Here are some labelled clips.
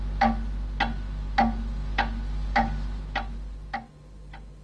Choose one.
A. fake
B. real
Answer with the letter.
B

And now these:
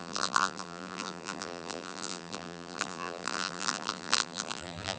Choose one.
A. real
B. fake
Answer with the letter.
B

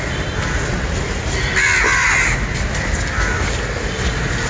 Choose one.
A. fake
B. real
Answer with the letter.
B